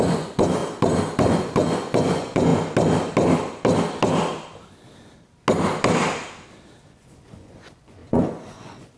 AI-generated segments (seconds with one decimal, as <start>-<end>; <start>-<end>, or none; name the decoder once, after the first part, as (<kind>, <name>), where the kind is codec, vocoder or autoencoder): 0.0-0.6 (vocoder, Vocos); 1.2-2.5; 6.8-9.0